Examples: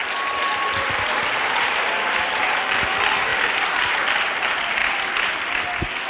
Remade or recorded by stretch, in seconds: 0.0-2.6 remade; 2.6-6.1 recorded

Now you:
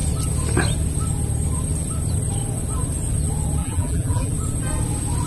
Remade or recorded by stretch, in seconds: 0.0-3.6 recorded; 3.6-4.3 remade; 4.3-5.3 recorded

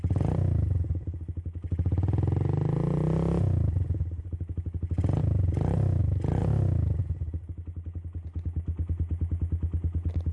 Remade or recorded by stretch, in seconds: 0.0-10.3 recorded

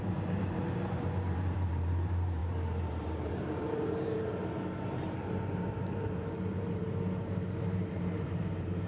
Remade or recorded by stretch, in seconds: 0.0-8.9 remade

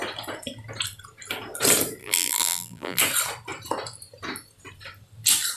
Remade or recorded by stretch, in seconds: 0.0-2.0 recorded; 2.0-3.0 remade; 3.0-5.6 recorded

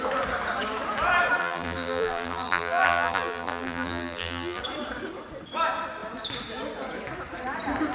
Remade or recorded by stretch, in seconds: 0.0-1.4 recorded; 1.4-4.6 remade; 4.6-7.9 recorded

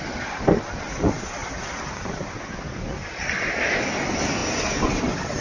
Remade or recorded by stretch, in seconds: 0.0-1.4 recorded; 1.4-3.9 remade; 3.9-5.4 recorded